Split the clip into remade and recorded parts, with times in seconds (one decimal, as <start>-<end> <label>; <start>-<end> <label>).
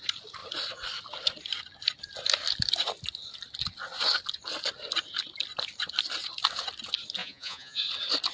0.0-7.2 recorded; 7.2-7.8 remade; 7.8-8.3 recorded